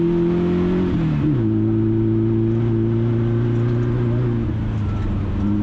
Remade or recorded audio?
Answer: recorded